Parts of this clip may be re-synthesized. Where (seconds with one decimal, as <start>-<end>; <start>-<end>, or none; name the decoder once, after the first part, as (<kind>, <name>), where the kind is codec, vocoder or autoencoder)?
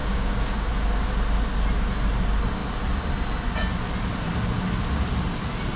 0.0-0.7 (codec, DAC)